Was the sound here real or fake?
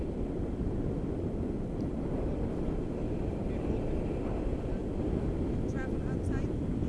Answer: real